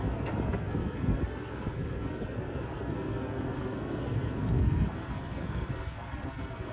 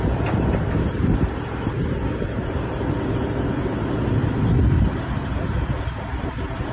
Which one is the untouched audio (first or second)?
second